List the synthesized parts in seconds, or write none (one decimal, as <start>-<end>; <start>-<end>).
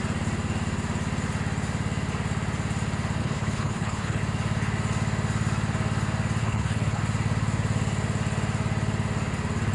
3.2-4.2; 6.4-7.0